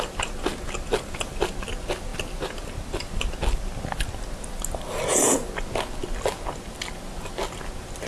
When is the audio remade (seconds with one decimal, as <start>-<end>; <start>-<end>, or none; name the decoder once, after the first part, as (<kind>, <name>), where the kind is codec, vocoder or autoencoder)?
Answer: none